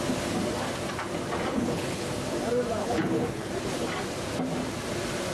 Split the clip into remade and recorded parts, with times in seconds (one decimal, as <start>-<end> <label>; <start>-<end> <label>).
0.0-1.5 recorded; 1.5-2.1 remade; 2.1-2.8 recorded; 2.8-3.5 remade; 3.5-5.3 recorded